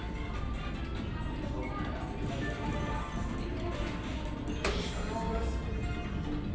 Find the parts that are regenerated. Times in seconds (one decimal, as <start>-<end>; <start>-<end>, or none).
none

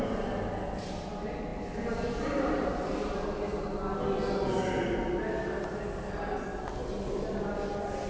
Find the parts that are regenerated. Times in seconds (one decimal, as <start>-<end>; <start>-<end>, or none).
none

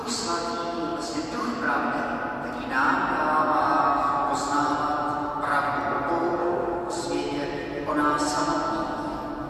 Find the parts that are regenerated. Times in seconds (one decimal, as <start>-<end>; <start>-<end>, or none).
6.4-7.0